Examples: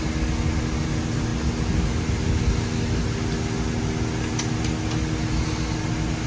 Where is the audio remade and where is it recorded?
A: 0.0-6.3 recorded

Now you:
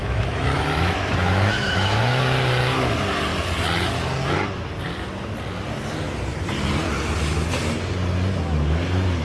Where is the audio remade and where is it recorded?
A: 0.0-2.2 remade; 2.2-9.2 recorded

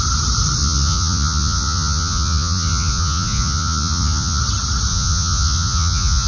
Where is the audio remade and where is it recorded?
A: 0.0-0.6 recorded; 0.6-4.4 remade; 4.4-4.9 recorded; 4.9-6.3 remade

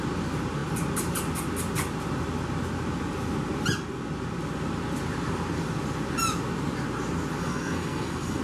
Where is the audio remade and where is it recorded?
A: 0.0-7.4 recorded; 7.4-8.4 remade

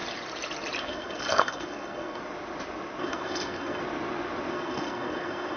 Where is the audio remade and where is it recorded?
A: 0.0-0.8 recorded; 0.8-2.2 remade; 2.2-3.0 recorded; 3.0-3.8 remade; 3.8-4.5 recorded; 4.5-5.6 remade

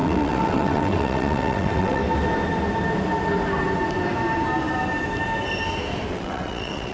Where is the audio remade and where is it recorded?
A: 0.0-2.0 remade; 2.0-6.1 recorded; 6.1-6.9 remade

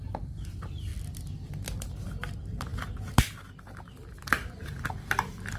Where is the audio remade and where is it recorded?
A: 0.0-0.9 remade; 0.9-1.8 recorded; 1.8-5.6 remade